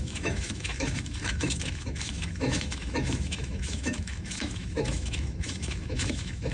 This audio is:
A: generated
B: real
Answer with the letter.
A